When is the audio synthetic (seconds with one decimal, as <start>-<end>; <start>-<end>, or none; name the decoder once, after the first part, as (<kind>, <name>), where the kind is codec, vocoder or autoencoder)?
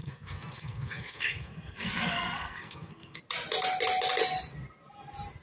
0.0-3.2 (codec, SNAC)